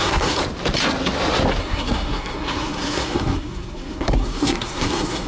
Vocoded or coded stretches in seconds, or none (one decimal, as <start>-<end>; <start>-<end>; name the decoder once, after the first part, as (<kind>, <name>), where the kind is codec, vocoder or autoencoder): 0.0-0.4 (codec, SNAC); 1.6-5.3